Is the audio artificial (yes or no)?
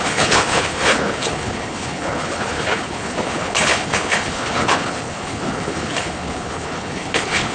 yes